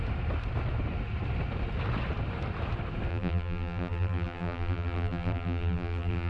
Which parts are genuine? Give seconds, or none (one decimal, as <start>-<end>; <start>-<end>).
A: 0.0-3.1